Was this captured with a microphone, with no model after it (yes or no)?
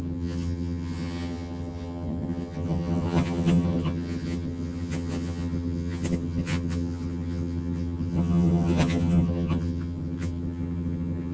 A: no